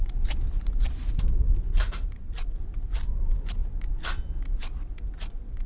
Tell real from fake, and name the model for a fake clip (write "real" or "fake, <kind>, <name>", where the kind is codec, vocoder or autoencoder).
real